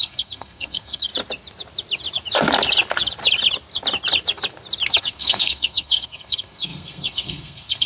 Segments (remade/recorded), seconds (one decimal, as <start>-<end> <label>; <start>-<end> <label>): 0.0-1.1 remade; 1.1-5.0 recorded; 5.0-7.9 remade